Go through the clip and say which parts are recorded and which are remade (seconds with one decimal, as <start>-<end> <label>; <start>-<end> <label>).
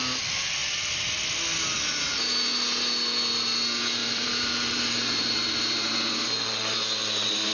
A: 0.0-4.0 recorded; 4.0-5.9 remade; 5.9-7.5 recorded